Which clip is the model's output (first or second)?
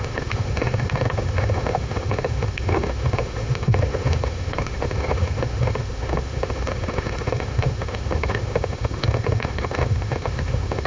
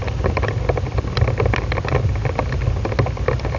first